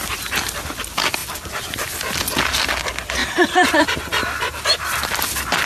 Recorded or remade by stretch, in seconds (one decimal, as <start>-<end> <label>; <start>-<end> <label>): 0.0-3.2 recorded; 3.2-5.0 remade; 5.0-5.7 recorded